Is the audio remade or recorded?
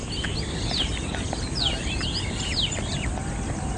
recorded